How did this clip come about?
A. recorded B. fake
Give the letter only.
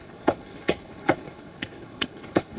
B